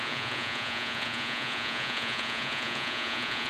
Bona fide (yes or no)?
no